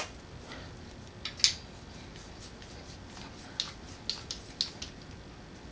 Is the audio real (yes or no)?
yes